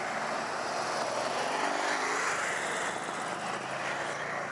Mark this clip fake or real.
real